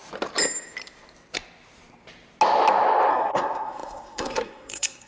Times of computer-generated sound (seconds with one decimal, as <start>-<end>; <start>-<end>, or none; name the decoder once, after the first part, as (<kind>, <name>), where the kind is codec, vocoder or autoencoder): 3.1-5.1 (codec, SNAC)